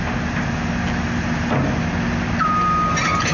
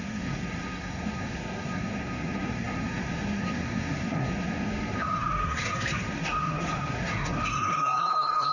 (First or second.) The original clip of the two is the first